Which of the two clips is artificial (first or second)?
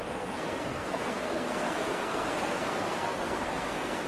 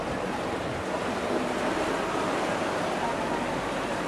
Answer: first